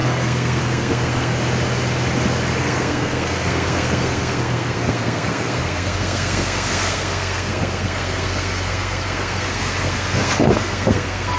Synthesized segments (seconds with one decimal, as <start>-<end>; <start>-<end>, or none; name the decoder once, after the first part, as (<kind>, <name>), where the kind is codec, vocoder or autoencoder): 0.0-1.3 (codec, SNAC); 2.6-11.4